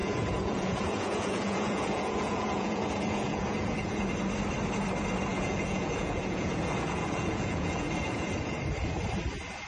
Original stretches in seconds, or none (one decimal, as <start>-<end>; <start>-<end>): 4.1-5.3; 8.6-9.7